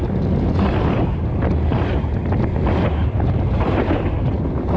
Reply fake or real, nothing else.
real